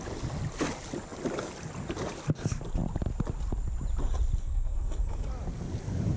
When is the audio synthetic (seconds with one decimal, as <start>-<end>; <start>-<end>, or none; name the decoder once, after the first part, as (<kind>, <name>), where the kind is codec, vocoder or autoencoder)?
4.4-5.3 (codec, SNAC)